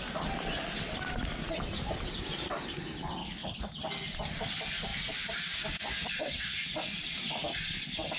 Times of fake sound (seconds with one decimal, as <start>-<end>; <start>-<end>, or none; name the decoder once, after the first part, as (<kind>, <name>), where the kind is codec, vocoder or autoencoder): 3.2-3.7 (codec, HILCodec)